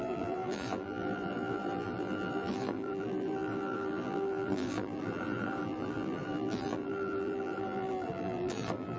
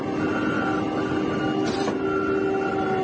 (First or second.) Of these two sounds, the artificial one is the first